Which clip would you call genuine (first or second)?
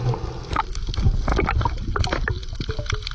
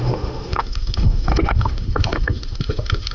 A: first